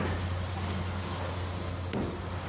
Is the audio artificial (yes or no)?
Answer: no